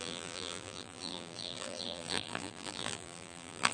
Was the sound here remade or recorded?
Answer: remade